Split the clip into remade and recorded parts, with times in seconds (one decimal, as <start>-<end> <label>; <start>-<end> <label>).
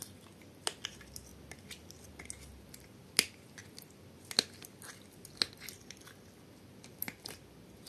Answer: 0.0-7.9 recorded